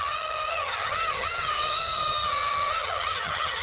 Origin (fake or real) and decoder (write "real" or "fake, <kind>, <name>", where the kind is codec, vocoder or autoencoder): fake, vocoder, HiFi-GAN